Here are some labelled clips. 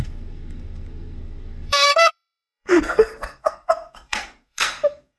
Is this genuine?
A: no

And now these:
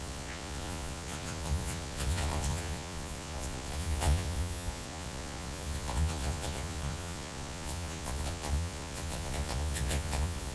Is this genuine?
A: no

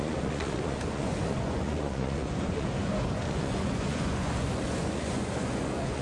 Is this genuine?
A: no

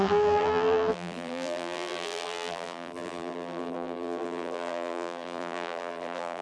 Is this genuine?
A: no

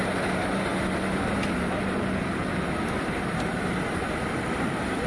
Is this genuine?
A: yes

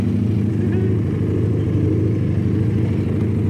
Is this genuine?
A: yes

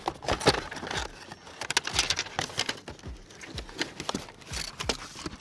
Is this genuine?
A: yes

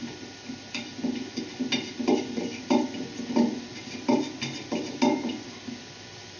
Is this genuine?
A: yes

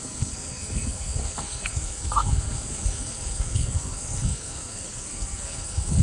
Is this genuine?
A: no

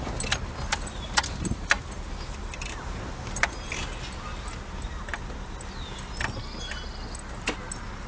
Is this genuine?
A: yes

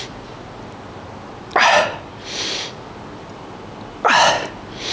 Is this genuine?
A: yes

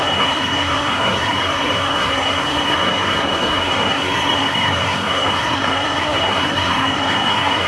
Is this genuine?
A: no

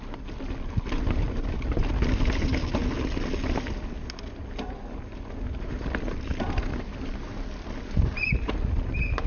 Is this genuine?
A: yes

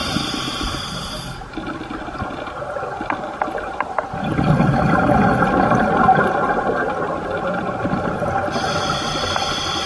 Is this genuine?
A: yes